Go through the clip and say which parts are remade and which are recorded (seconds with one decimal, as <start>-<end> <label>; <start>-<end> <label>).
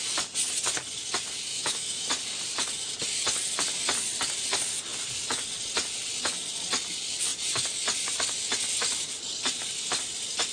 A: 0.0-1.5 recorded; 1.5-2.1 remade; 2.1-10.5 recorded